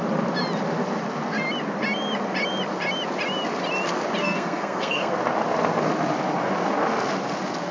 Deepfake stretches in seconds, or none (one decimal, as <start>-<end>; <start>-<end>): 4.2-5.1